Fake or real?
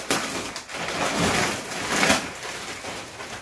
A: real